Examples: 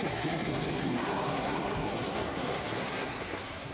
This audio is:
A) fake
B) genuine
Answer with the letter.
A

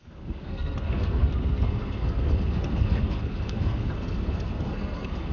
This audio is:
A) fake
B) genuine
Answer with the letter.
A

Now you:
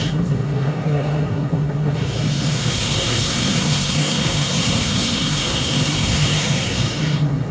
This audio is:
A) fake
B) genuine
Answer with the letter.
A